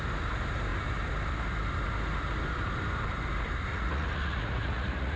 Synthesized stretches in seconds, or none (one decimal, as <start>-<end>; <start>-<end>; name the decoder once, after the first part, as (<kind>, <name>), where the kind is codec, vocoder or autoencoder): 3.7-5.2 (vocoder, Vocos)